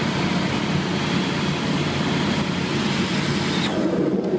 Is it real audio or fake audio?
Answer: real